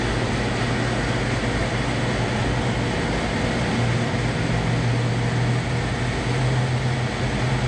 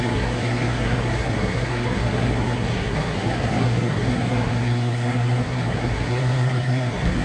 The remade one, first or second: second